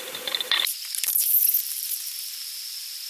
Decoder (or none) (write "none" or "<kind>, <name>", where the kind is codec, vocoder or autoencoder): none